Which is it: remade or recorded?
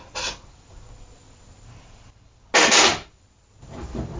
recorded